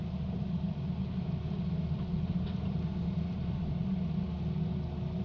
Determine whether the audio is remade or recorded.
recorded